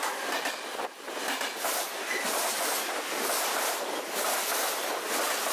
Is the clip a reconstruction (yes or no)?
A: no